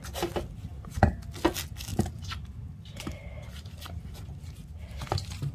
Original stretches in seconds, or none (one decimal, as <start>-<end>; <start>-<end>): 0.0-5.5